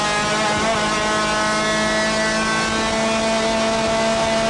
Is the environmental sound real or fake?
real